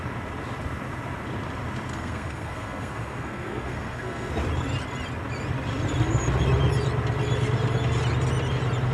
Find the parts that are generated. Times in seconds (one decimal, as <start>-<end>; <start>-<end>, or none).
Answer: 1.9-4.3